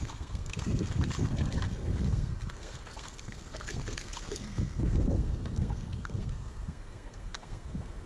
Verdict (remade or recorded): remade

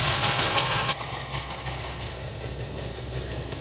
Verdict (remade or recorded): remade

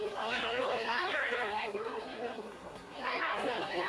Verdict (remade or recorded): remade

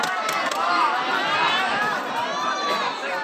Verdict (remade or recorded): remade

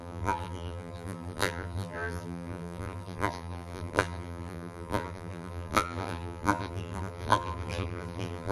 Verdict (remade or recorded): remade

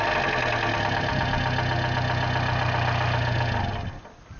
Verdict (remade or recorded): recorded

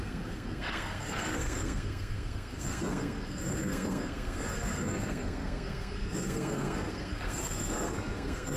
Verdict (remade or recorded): remade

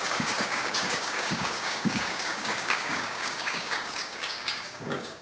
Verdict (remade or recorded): remade